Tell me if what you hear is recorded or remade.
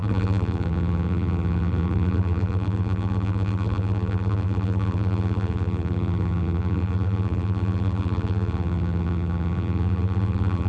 remade